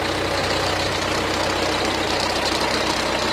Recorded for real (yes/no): yes